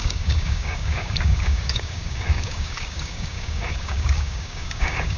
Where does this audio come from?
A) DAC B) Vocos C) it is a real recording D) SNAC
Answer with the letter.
A